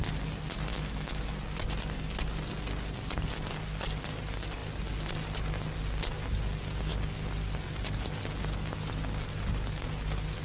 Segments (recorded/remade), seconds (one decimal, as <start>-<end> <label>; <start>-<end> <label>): 0.0-0.7 recorded; 0.7-1.2 remade; 1.2-10.4 recorded